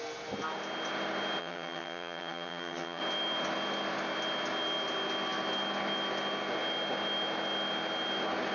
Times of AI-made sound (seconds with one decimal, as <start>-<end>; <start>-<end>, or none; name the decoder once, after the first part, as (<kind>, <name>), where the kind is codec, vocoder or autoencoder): 1.4-3.0 (vocoder, HiFi-GAN)